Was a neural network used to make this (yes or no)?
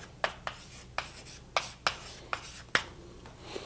no